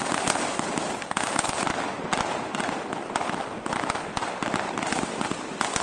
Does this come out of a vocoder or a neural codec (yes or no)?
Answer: no